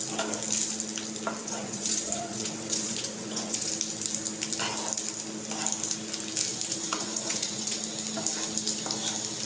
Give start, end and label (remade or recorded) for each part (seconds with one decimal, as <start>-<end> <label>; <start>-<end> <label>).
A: 0.0-1.4 recorded; 1.4-3.7 remade; 3.7-6.5 recorded; 6.5-7.8 remade; 7.8-9.5 recorded